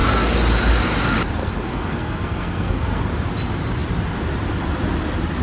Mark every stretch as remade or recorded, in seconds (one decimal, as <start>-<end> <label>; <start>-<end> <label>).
0.0-1.4 recorded; 1.4-3.1 remade; 3.1-5.4 recorded